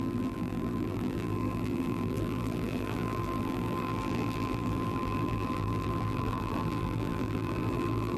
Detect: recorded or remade remade